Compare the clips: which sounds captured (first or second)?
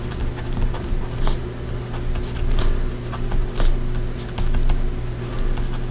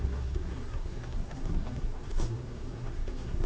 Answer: first